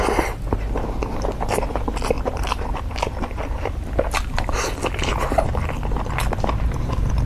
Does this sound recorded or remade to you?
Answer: recorded